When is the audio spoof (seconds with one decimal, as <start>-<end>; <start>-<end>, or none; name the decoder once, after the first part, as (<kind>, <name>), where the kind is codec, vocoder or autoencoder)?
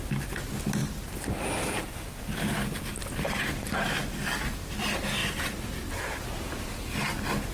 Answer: 0.8-2.2 (vocoder, BigVGAN v2); 5.2-5.9